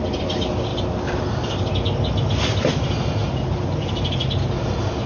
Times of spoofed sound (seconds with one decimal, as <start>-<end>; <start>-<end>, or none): none